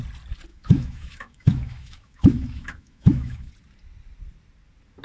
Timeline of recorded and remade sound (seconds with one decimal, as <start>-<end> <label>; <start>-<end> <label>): 0.0-0.5 recorded; 0.5-3.5 remade; 3.5-5.0 recorded